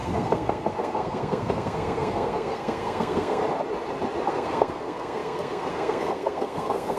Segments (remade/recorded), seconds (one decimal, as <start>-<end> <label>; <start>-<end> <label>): 0.0-3.4 remade; 3.4-4.3 recorded; 4.3-7.0 remade